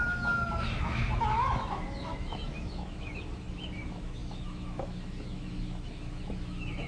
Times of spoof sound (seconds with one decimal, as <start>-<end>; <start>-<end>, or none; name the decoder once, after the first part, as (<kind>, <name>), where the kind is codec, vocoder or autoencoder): 0.0-6.9 (autoencoder, DAC-VAE)